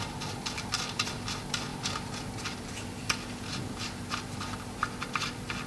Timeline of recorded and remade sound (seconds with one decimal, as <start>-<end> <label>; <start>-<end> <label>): 0.0-5.7 recorded